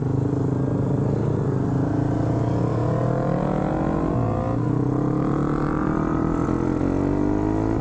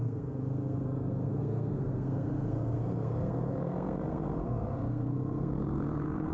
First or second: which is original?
first